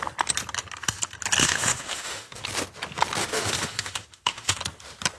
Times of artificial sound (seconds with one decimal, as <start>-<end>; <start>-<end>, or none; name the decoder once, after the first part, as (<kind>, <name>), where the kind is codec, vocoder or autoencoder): 1.4-2.4 (autoencoder, DAC-VAE); 3.2-4.6